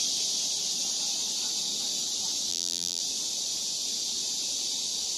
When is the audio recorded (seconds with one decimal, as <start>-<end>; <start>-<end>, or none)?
0.0-2.5; 3.0-5.2